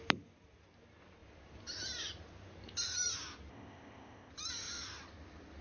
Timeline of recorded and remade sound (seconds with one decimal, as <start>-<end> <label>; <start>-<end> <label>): 0.0-3.5 recorded; 3.5-4.3 remade; 4.3-5.6 recorded